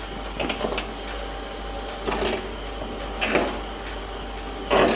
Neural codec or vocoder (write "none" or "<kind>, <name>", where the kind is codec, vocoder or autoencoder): none